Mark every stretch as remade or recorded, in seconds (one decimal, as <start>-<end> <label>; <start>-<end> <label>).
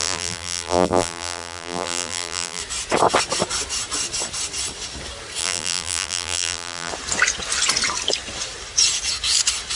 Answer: 0.0-2.6 remade; 2.6-5.4 recorded; 5.4-6.9 remade; 6.9-9.8 recorded